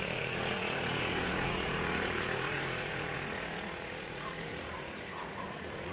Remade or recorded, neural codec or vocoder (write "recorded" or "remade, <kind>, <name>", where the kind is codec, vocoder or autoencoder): remade, vocoder, Vocos